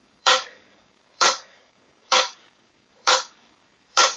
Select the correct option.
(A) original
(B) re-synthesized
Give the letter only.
B